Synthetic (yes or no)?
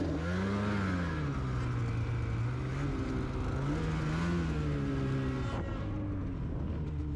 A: no